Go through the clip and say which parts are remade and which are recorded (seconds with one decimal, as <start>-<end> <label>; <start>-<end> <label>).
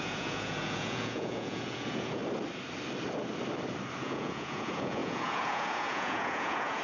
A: 0.0-2.2 remade; 2.2-4.0 recorded; 4.0-6.8 remade